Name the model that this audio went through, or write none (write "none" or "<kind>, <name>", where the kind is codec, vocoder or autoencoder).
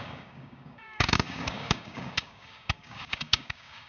codec, DAC